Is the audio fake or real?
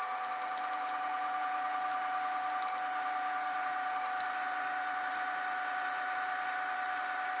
real